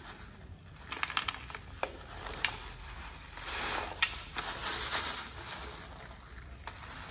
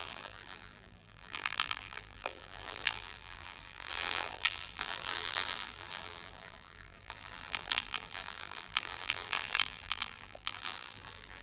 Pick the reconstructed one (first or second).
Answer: second